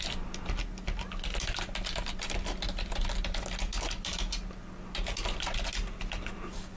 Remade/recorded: recorded